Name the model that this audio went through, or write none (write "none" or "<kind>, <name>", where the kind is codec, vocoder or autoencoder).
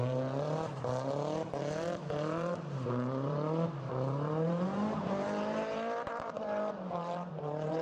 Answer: vocoder, BigVGAN v2